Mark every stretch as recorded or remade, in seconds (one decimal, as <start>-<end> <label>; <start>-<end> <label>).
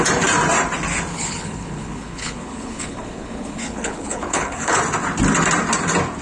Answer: 0.0-1.1 recorded; 1.1-4.8 remade; 4.8-6.2 recorded